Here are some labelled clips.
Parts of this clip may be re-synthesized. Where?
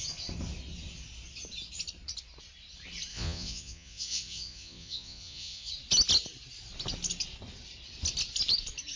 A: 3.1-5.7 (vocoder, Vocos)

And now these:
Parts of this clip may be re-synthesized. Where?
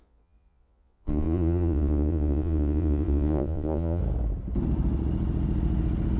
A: 0.0-4.0 (vocoder, Vocos)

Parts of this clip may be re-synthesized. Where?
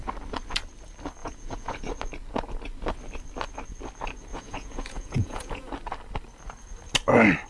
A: 1.2-1.8 (vocoder, Vocos); 4.3-5.7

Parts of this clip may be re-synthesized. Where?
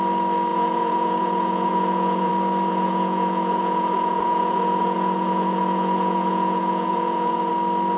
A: 0.5-2.3 (vocoder, Vocos); 2.7-7.5